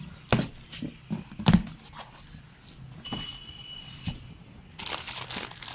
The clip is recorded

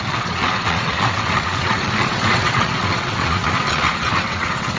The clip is remade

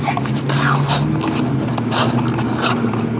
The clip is recorded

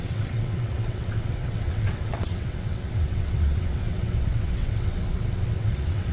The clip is remade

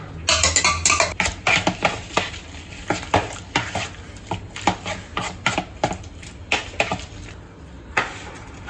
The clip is recorded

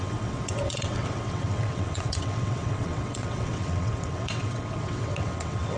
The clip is remade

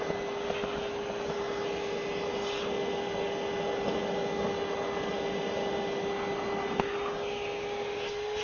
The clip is recorded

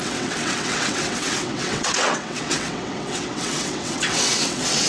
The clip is remade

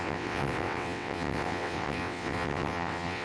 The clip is remade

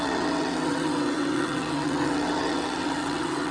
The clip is remade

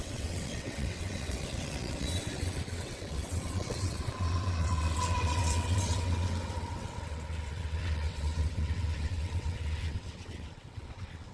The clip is remade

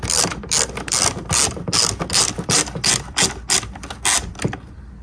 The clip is recorded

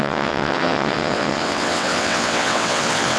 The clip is remade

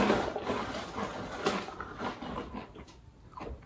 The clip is recorded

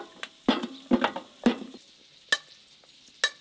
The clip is recorded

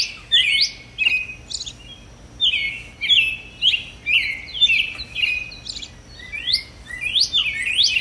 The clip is recorded